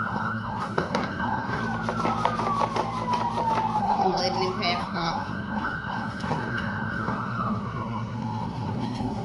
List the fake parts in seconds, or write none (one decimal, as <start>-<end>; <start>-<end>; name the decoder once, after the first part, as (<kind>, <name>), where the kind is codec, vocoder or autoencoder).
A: 0.0-1.6 (codec, SNAC); 3.8-4.2; 4.8-9.2